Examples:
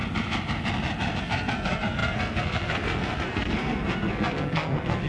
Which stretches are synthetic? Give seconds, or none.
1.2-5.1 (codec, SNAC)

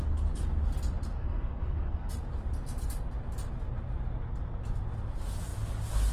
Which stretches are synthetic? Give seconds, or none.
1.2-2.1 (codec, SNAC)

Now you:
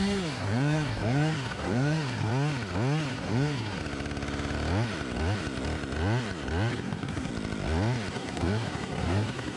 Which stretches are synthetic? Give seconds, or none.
0.0-2.3 (codec, SNAC); 3.1-3.8; 6.7-7.3; 8.1-9.6